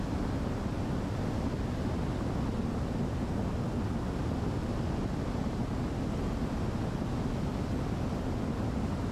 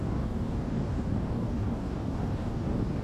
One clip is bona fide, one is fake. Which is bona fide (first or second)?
first